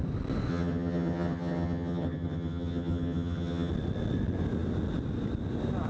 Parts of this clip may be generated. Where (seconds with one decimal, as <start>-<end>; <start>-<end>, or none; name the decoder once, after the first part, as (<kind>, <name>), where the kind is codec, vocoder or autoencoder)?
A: 0.5-3.7 (vocoder, HiFi-GAN)